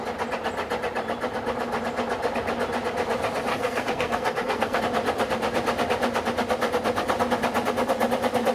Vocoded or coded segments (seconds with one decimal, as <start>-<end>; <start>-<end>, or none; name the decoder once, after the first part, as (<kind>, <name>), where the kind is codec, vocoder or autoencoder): 3.5-4.8 (codec, SNAC)